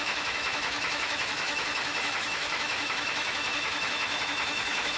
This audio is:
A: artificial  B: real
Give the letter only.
A